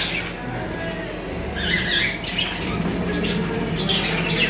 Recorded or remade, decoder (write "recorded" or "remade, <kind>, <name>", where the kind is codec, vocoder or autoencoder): recorded